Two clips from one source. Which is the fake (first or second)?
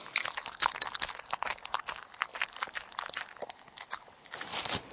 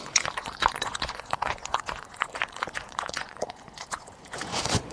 second